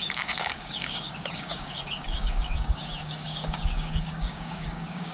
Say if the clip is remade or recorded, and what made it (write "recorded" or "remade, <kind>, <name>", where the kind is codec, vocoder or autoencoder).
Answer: remade, codec, DAC